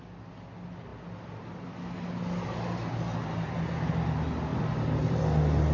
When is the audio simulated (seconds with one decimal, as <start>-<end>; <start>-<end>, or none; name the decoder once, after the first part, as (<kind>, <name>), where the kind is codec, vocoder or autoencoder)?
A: 4.5-5.2 (vocoder, BigVGAN v2)